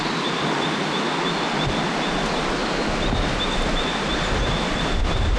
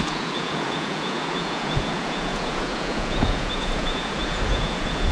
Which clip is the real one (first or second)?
first